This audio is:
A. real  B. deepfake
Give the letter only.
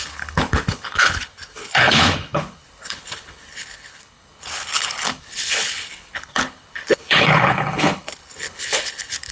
B